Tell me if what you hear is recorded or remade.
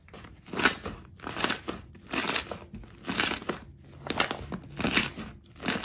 recorded